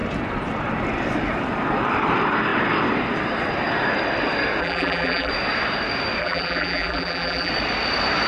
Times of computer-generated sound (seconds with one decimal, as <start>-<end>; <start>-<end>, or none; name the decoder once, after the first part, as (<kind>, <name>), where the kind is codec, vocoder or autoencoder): 4.6-5.3 (vocoder, BigVGAN v2); 6.2-7.5